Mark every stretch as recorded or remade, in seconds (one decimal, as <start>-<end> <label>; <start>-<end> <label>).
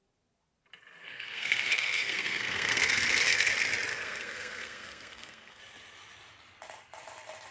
0.0-1.0 recorded; 1.0-3.5 remade; 3.5-3.9 recorded; 3.9-5.6 remade; 5.6-7.5 recorded